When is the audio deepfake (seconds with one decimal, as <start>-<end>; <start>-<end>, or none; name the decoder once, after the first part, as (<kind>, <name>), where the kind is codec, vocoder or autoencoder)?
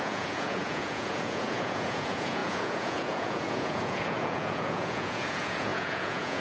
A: 0.0-6.4 (vocoder, Vocos)